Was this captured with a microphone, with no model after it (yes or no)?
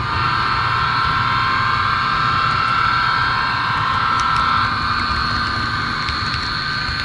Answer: yes